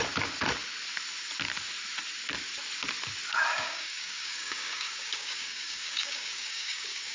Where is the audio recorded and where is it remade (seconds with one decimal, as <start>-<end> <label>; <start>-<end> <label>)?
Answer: 0.0-3.5 recorded; 3.5-7.1 remade